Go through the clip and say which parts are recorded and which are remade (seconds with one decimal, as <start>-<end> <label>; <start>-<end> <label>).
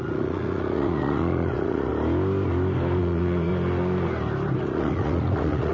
0.0-1.9 remade; 1.9-3.0 recorded; 3.0-3.5 remade; 3.5-4.6 recorded; 4.6-5.7 remade